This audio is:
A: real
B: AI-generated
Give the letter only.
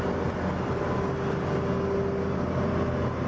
A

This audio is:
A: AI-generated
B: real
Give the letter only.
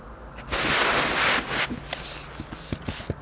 B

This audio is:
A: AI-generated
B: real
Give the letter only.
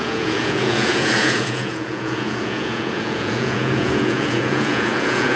A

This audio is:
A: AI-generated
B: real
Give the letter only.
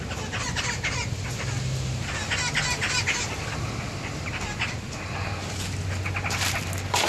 B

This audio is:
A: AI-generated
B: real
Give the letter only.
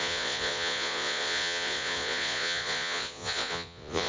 A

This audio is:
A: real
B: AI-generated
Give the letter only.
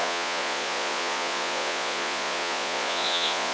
B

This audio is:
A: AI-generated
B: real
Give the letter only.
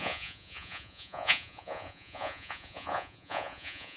A